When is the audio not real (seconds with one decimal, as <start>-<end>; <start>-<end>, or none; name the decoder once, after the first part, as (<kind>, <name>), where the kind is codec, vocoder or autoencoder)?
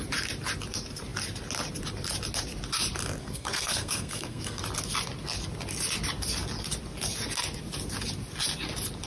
3.2-4.6 (codec, SNAC)